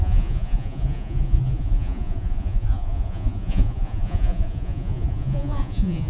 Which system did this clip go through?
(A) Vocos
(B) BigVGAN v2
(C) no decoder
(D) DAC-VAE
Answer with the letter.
A